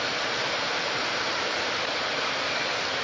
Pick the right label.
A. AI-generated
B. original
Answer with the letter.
A